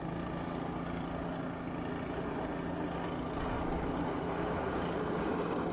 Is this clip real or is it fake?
real